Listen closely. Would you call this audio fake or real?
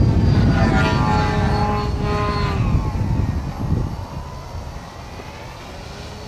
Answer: real